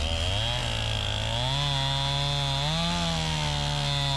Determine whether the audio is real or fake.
real